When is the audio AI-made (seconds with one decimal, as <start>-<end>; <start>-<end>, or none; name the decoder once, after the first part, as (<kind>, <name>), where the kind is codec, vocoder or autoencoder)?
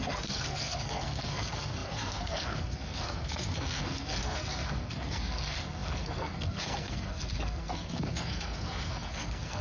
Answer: 0.0-9.6 (codec, SNAC)